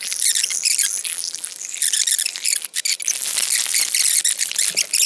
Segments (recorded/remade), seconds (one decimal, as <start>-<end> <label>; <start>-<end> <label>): 0.0-5.1 recorded